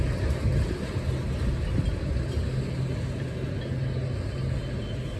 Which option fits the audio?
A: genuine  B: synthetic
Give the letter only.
A